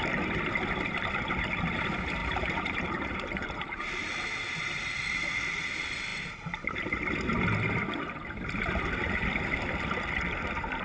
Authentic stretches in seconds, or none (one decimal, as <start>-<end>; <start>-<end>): 0.0-2.2; 4.1-10.8